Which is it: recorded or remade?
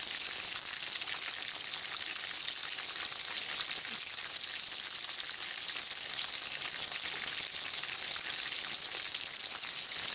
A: recorded